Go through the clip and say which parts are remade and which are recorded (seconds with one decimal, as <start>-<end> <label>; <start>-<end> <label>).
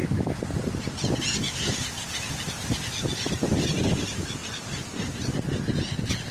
0.0-6.3 recorded